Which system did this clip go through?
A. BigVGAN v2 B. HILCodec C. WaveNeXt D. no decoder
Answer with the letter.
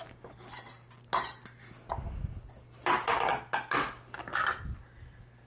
D